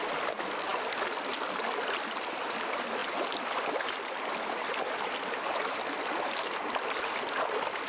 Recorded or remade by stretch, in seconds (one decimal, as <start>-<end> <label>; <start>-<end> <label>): 0.0-7.9 recorded